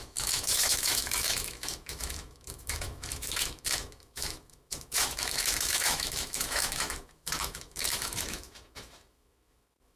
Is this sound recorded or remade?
remade